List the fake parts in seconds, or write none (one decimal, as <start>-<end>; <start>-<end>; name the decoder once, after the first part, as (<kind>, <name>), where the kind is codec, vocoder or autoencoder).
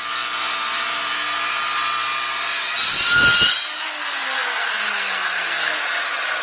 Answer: 3.7-5.8 (codec, SNAC)